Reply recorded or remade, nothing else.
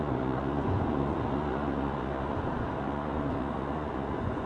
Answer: remade